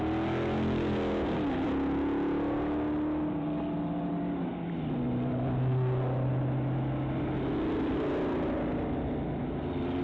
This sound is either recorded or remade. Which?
recorded